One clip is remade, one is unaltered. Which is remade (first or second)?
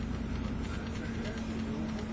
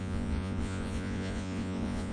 second